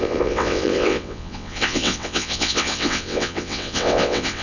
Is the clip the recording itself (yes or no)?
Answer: no